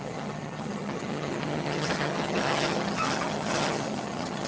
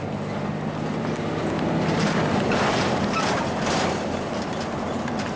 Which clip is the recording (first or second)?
second